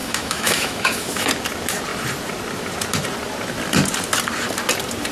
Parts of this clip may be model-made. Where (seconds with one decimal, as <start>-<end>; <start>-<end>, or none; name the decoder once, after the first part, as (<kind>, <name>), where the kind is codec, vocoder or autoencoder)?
0.0-1.3 (autoencoder, DAC-VAE)